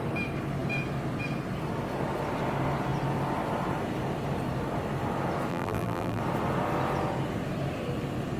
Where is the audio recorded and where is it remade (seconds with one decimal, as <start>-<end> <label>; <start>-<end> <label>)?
0.0-5.5 recorded; 5.5-6.2 remade; 6.2-8.4 recorded